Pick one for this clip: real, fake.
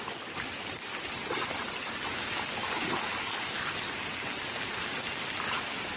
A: real